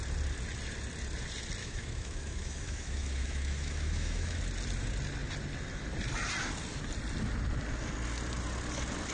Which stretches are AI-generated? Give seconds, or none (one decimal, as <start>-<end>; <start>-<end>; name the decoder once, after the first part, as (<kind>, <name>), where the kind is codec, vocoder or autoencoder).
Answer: 1.6-4.4 (autoencoder, DAC-VAE)